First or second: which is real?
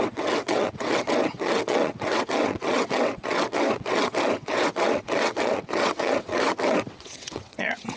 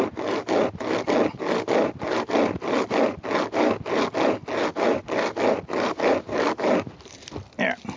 second